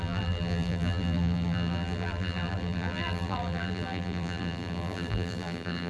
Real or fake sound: fake